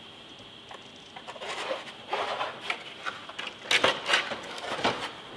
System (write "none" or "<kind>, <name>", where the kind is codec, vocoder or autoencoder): none